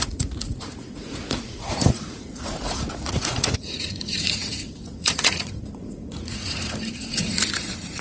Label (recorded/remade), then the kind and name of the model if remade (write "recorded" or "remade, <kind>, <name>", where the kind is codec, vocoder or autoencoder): remade, vocoder, Vocos